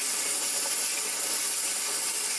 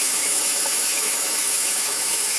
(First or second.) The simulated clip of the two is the second